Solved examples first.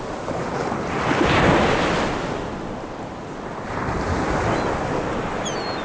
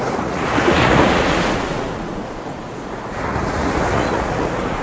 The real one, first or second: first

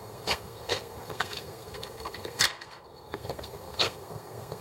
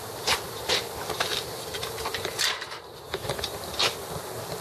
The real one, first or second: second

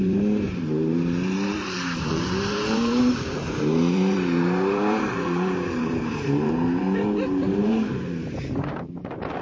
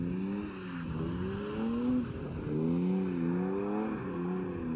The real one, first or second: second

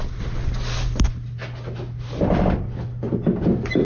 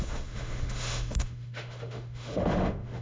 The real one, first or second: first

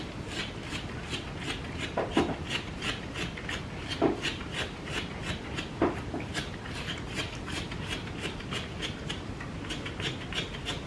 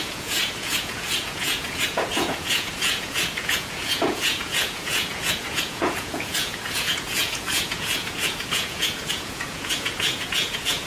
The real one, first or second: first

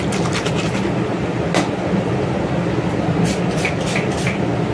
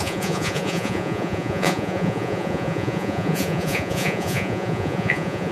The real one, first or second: first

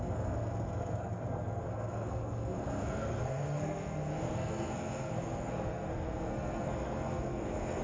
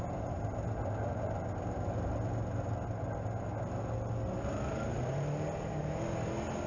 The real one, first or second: second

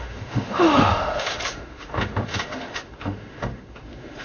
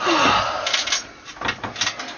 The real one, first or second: second